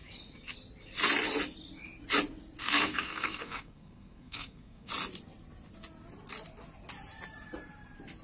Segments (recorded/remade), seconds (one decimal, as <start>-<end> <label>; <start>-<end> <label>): 0.0-2.6 recorded; 2.6-4.9 remade; 4.9-8.2 recorded